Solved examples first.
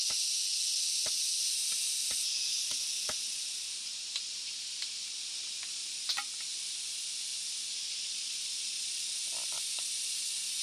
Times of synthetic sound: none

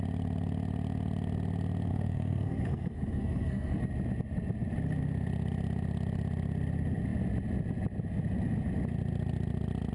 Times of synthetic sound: 1.9-3.8 (codec, SNAC)